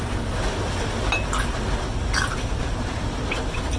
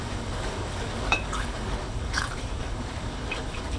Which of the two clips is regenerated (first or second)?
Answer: second